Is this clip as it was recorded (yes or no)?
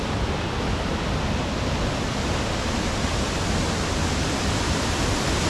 yes